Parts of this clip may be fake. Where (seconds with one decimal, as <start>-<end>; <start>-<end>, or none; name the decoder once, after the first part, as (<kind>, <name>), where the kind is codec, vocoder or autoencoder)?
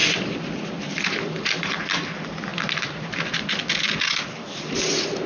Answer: 0.0-2.5 (vocoder, BigVGAN v2); 4.5-5.3